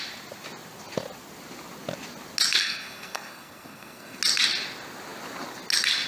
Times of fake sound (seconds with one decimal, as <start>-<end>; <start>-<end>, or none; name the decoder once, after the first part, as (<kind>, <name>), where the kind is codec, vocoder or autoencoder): 2.6-4.2 (codec, SNAC)